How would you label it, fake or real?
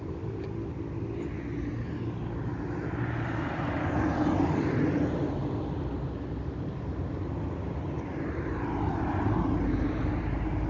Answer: real